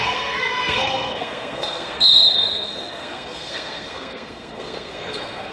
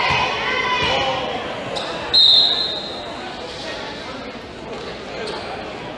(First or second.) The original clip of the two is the second